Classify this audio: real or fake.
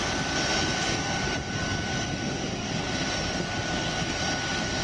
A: real